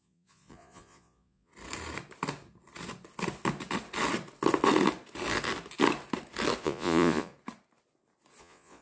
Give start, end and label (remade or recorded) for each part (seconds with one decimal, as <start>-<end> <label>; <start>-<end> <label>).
0.0-1.5 remade; 1.5-6.6 recorded; 6.6-7.3 remade; 7.3-8.4 recorded; 8.4-8.8 remade